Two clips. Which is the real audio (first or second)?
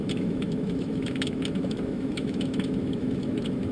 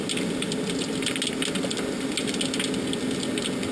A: second